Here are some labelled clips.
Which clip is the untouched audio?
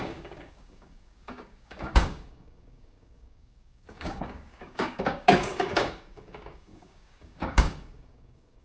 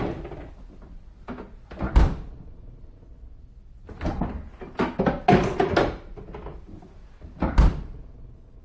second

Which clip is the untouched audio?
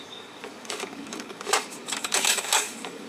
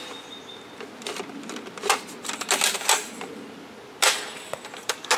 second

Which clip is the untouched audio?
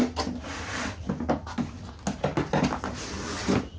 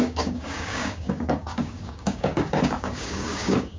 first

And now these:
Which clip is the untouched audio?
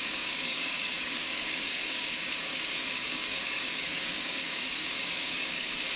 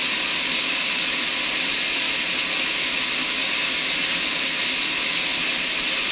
second